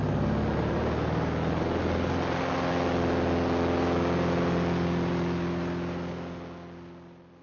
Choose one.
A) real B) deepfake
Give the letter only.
A